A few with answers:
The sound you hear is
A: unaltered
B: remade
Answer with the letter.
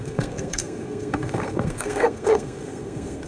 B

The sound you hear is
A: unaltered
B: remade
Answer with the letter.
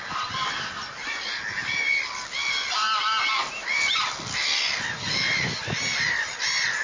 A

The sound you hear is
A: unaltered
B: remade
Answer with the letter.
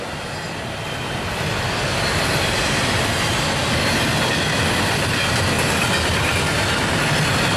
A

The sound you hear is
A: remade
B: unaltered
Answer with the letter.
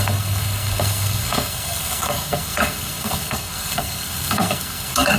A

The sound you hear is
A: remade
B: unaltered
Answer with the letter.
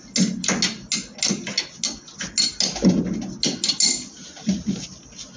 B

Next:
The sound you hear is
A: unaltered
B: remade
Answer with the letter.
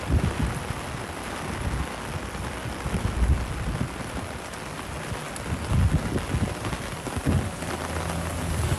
A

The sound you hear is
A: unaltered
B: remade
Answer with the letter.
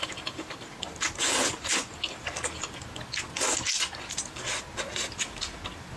A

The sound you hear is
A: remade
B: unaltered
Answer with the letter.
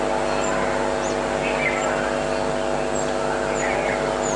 B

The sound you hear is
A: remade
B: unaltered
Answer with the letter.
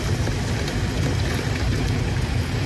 B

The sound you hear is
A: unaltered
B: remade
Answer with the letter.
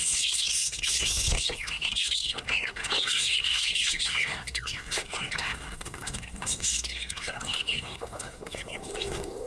B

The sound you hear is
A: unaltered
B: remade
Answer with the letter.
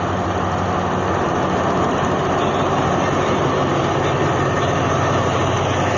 A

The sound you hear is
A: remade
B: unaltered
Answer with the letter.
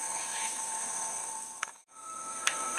A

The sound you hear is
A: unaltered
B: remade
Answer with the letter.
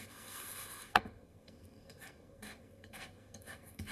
B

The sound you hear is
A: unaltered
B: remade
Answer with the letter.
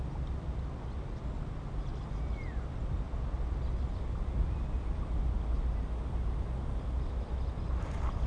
A